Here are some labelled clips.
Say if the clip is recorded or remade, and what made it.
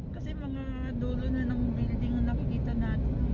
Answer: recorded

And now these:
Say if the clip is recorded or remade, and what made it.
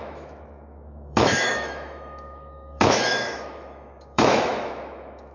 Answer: remade, autoencoder, DAC-VAE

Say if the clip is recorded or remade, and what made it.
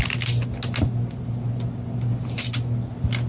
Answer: recorded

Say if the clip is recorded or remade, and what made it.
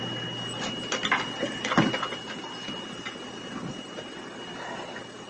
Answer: recorded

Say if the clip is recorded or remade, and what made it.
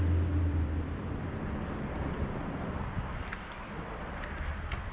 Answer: recorded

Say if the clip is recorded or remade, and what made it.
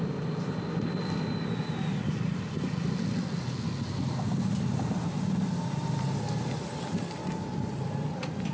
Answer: recorded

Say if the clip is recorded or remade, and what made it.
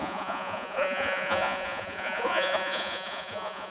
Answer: remade, vocoder, Vocos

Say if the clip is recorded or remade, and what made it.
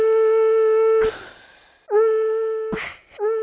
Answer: recorded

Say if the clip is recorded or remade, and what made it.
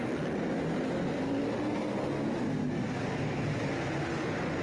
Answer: recorded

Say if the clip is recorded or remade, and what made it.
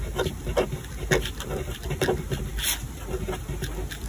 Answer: recorded